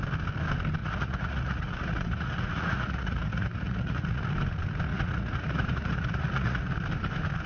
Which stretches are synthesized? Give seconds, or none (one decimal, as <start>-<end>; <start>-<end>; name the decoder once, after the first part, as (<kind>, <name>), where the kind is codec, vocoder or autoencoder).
0.8-4.2 (vocoder, Vocos); 4.9-6.7